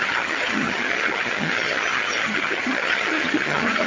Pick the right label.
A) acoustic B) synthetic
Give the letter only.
B